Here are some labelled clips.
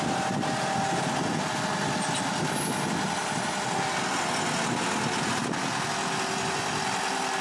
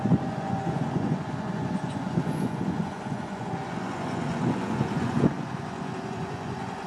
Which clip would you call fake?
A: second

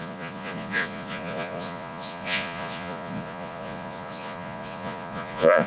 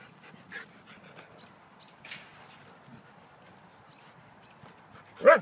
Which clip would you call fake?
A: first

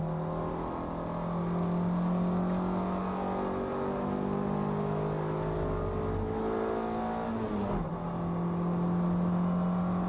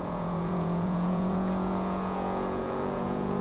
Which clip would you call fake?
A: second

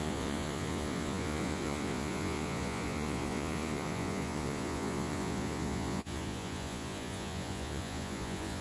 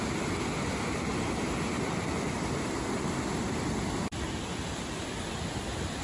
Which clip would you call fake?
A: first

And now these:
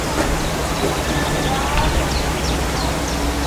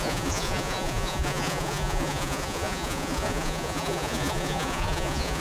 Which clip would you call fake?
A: second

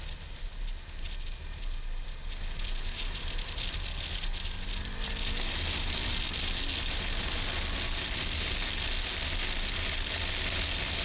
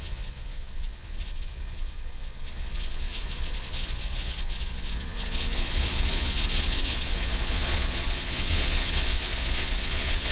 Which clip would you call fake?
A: second